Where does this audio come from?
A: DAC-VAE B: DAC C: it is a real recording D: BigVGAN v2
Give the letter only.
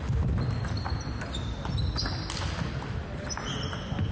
C